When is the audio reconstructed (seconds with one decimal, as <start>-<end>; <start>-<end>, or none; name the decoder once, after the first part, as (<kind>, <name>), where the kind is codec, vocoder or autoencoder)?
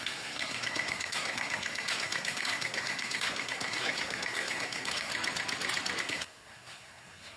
0.0-5.1 (codec, SNAC); 6.0-7.4